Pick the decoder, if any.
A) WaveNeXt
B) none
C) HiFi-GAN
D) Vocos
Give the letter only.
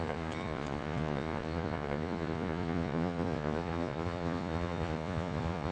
D